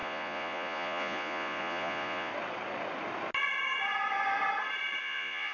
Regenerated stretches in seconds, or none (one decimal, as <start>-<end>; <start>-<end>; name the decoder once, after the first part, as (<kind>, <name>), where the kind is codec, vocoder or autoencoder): 0.0-2.3 (vocoder, Vocos); 5.0-5.5